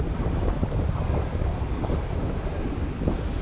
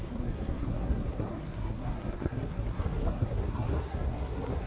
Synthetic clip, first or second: second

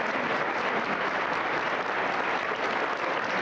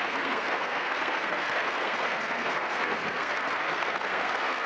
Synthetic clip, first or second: second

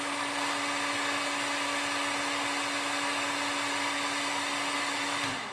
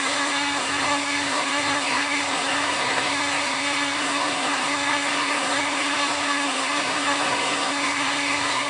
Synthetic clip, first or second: second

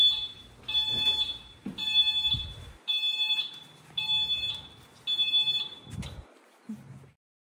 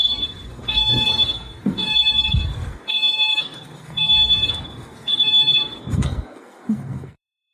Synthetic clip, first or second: second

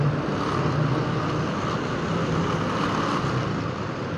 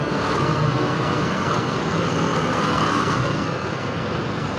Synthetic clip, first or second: second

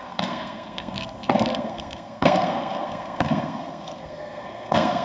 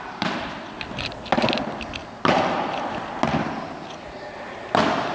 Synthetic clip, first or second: first